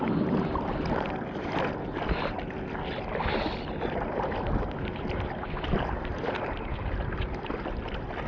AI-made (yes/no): no